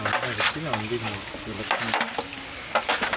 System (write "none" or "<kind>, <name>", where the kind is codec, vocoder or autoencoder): none